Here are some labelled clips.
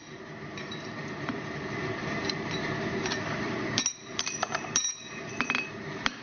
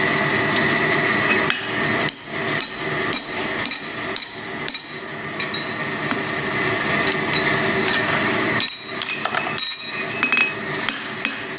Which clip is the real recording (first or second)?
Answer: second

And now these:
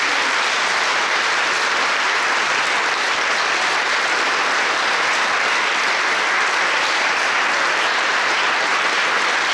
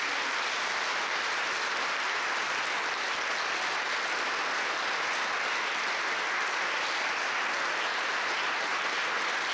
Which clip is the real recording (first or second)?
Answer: second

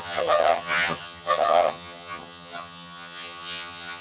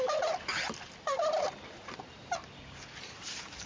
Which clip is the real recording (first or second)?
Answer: second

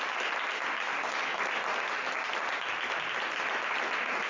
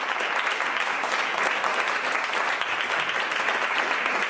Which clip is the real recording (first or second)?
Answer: first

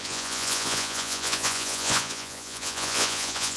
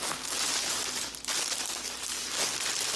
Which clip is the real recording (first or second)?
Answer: second